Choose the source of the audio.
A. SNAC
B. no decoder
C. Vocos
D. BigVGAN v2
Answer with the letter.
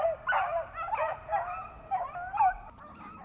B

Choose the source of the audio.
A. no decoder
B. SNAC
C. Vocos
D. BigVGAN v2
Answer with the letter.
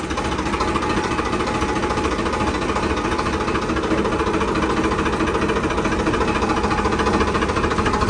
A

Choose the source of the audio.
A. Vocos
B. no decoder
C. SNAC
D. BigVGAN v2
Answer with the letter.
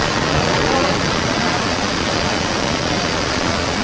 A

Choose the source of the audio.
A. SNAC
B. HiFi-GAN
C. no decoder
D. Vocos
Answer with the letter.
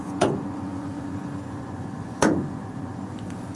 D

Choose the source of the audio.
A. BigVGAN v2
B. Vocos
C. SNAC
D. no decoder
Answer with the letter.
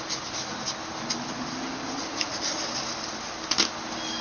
D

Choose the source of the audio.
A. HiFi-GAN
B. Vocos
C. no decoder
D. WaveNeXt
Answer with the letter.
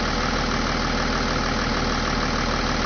C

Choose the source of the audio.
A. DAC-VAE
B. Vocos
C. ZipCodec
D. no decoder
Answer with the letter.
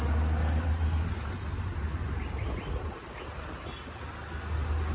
D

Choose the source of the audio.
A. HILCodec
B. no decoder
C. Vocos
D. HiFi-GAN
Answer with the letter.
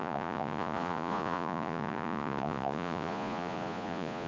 C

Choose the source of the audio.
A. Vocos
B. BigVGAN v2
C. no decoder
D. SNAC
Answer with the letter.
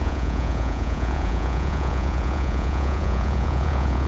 A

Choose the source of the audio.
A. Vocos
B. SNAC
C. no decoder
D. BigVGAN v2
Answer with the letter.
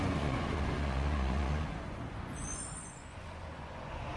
A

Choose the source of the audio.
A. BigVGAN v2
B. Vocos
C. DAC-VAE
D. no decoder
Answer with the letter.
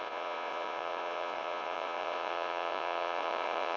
B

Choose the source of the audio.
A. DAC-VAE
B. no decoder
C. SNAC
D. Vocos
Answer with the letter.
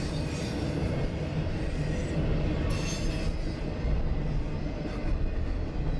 B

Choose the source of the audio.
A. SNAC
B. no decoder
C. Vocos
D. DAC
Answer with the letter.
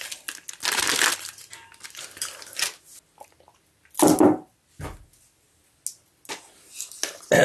B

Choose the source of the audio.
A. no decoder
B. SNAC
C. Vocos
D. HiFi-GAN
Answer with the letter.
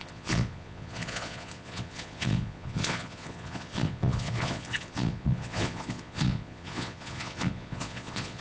C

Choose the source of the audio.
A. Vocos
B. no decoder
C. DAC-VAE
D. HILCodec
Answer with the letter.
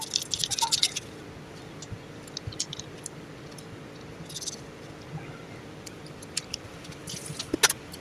B